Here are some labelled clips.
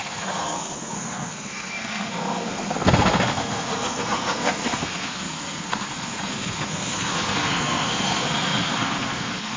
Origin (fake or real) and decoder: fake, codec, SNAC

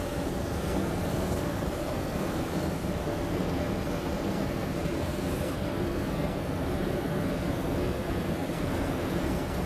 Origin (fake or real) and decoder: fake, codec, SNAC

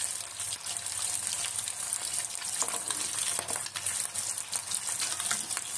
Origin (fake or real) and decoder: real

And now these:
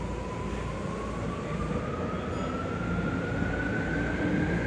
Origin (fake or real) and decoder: real